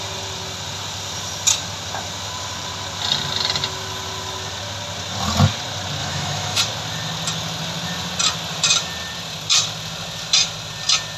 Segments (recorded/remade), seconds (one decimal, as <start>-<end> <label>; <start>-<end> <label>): 0.0-6.0 recorded; 6.0-6.6 remade; 6.6-11.2 recorded